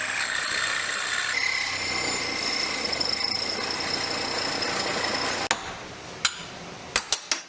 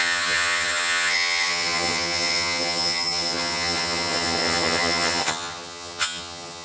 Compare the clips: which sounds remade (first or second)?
second